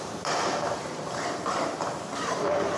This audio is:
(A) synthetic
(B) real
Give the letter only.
A